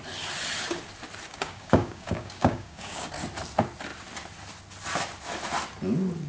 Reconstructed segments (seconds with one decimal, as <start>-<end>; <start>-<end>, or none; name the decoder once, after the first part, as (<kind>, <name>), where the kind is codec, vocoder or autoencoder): 1.3-3.1 (codec, DAC)